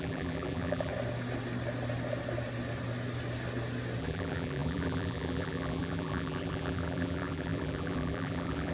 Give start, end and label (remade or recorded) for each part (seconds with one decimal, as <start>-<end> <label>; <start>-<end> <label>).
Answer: 0.0-0.9 remade; 0.9-4.0 recorded; 4.0-8.7 remade